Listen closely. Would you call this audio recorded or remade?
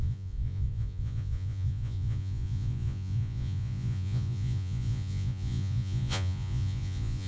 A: remade